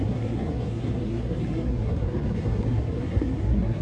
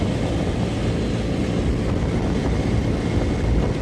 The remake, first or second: first